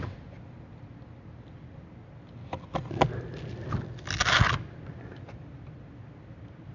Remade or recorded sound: recorded